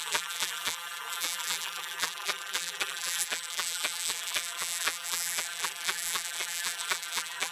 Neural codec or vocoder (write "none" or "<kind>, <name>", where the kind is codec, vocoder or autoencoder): vocoder, BigVGAN v2